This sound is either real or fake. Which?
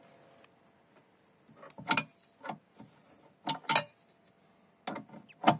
real